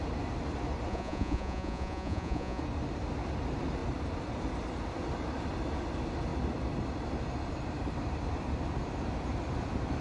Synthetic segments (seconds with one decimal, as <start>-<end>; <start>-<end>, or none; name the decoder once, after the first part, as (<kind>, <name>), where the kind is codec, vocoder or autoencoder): 0.9-2.6 (vocoder, Vocos)